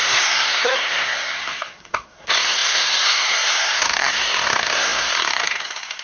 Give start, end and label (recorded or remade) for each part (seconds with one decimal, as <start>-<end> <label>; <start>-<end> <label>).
0.0-6.0 remade